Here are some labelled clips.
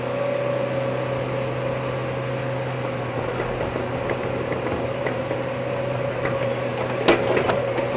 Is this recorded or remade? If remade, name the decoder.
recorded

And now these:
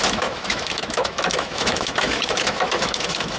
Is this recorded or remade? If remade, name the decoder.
remade, autoencoder, DAC-VAE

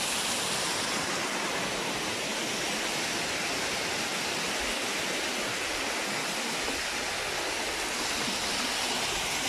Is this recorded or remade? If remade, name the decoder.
recorded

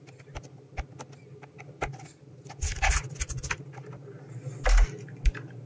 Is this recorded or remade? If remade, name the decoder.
recorded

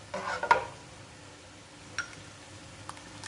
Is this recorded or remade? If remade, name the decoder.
recorded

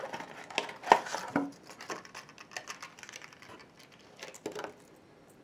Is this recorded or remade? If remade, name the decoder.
recorded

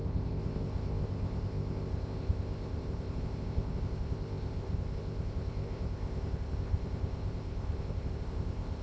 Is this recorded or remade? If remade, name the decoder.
remade, codec, ZipCodec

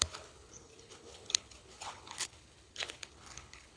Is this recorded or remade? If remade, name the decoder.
remade, codec, HILCodec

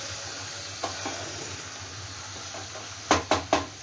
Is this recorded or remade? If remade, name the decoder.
recorded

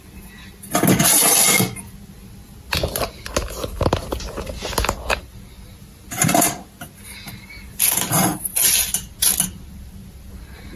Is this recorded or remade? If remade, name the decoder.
recorded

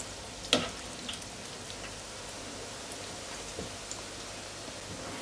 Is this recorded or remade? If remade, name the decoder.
recorded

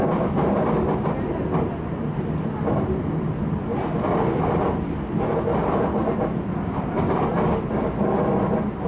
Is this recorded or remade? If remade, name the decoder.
recorded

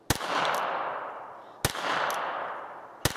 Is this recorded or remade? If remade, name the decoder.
recorded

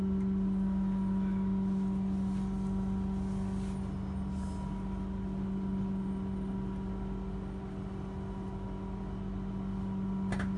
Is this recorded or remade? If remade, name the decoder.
recorded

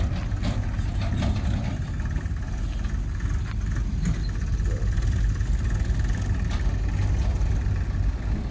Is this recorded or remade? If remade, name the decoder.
recorded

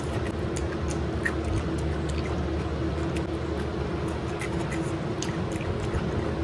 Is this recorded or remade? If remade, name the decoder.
recorded